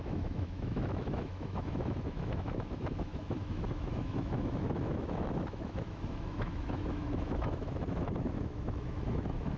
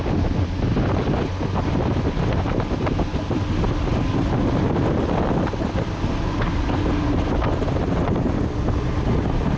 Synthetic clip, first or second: first